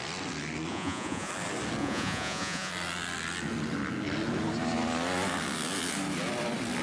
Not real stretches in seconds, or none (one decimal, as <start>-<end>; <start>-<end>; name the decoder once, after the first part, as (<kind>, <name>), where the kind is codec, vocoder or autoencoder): 0.7-1.3 (vocoder, Vocos); 1.8-2.7